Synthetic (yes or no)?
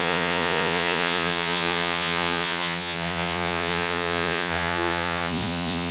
yes